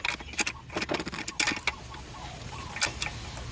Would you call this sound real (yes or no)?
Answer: yes